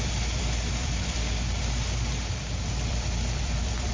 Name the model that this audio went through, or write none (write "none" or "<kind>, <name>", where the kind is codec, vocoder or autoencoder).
vocoder, BigVGAN v2